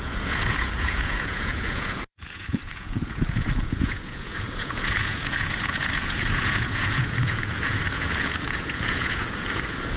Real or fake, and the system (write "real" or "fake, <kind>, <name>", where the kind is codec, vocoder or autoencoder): fake, vocoder, Vocos